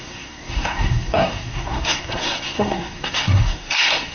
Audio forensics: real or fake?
fake